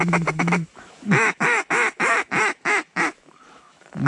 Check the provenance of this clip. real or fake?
fake